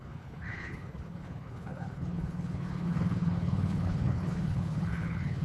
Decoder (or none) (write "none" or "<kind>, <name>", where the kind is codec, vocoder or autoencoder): codec, HILCodec